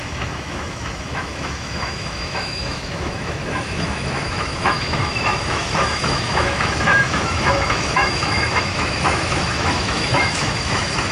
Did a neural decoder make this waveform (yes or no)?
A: yes